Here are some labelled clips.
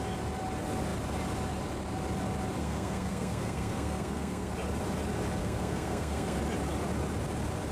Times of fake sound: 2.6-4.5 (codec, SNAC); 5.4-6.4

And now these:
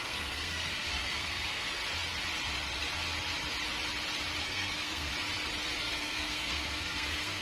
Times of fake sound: 0.0-1.8 (codec, SNAC); 4.4-5.1; 5.8-7.4

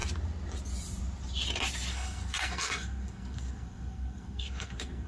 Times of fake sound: 1.9-5.1 (codec, SNAC)

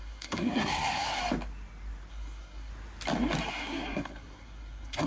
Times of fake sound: 0.0-1.2 (codec, SNAC); 2.1-2.7; 3.5-5.1

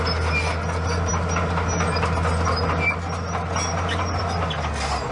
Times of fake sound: none

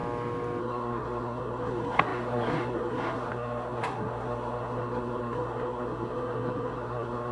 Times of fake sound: 0.6-7.3 (codec, SNAC)